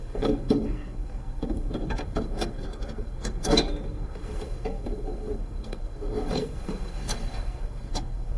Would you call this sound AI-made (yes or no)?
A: yes